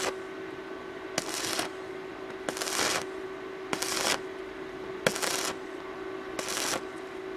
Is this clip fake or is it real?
real